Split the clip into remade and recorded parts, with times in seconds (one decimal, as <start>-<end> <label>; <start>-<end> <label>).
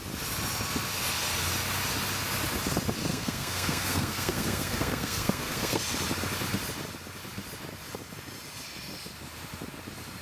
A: 0.0-3.1 recorded; 3.1-5.8 remade; 5.8-10.2 recorded